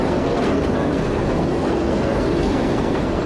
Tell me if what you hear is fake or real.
fake